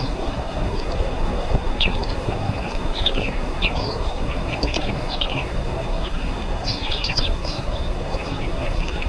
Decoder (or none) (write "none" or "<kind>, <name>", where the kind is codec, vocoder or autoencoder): codec, SNAC